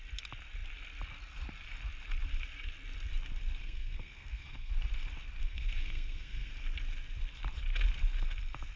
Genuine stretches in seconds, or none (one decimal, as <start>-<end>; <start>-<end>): 0.0-3.6; 4.7-5.4; 6.5-8.8